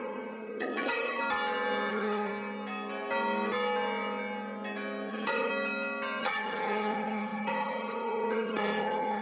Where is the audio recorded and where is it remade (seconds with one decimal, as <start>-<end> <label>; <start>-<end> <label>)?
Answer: 0.0-1.2 remade; 1.2-1.9 recorded; 1.9-2.3 remade; 2.3-5.1 recorded; 5.1-5.5 remade; 5.5-6.2 recorded; 6.2-9.2 remade